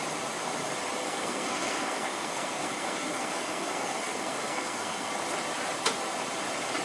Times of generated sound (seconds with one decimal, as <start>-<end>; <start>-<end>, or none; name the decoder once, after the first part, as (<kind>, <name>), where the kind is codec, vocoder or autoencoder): 1.0-5.1 (codec, SNAC)